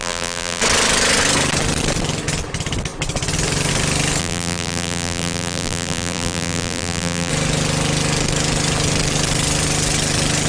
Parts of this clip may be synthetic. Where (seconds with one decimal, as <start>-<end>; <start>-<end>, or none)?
0.0-0.6; 4.2-7.3